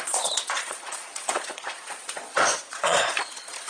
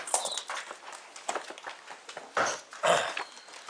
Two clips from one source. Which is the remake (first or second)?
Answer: first